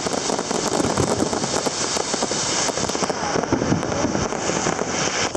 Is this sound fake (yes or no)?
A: no